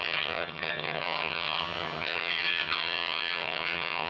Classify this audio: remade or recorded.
remade